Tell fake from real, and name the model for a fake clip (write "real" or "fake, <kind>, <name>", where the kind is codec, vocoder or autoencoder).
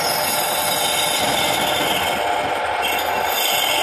real